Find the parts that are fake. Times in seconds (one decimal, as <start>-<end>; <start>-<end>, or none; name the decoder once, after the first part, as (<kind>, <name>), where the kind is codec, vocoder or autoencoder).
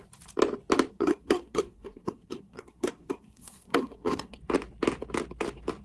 0.9-4.4 (codec, SNAC)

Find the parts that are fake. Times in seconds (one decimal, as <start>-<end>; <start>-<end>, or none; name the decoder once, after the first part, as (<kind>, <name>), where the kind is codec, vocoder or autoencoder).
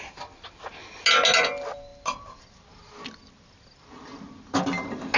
none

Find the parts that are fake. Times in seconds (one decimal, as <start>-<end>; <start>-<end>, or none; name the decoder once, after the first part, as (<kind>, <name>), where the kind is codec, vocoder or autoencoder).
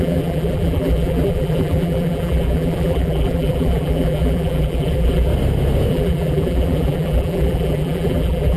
0.0-5.3 (vocoder, BigVGAN v2); 5.9-8.6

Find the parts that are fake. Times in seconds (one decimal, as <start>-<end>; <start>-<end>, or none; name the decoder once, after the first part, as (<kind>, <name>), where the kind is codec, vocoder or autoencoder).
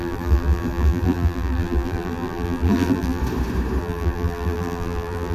0.0-3.2 (vocoder, BigVGAN v2); 3.8-5.3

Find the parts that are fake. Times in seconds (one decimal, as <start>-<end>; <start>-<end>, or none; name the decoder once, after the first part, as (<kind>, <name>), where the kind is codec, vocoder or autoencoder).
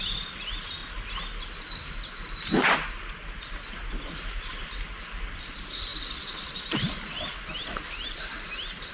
0.0-0.8 (vocoder, BigVGAN v2); 4.1-8.9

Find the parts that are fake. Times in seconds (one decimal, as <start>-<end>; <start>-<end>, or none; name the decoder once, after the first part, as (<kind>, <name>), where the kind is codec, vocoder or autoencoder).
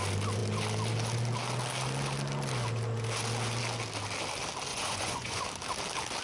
4.7-5.4 (vocoder, Vocos)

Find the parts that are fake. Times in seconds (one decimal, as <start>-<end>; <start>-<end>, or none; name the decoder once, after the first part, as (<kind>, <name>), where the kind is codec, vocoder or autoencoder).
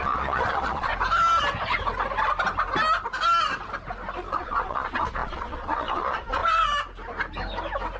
0.0-0.9 (vocoder, Vocos); 4.3-6.4